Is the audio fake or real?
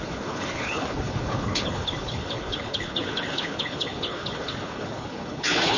fake